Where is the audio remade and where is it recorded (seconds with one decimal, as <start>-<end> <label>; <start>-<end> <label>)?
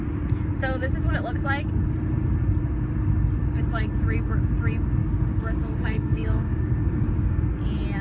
0.0-5.0 recorded; 5.0-7.4 remade; 7.4-8.0 recorded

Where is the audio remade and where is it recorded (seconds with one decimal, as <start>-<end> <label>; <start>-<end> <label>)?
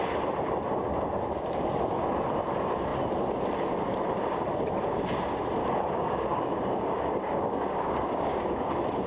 0.0-5.6 recorded; 5.6-8.7 remade; 8.7-9.1 recorded